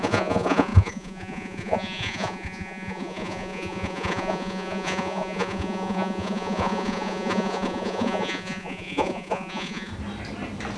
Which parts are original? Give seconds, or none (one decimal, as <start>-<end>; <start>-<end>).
9.9-10.8